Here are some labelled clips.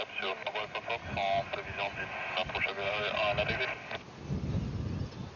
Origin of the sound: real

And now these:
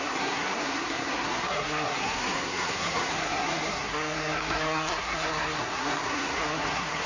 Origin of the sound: fake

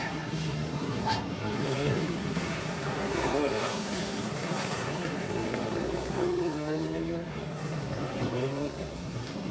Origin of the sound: fake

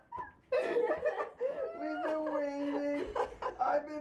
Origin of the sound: real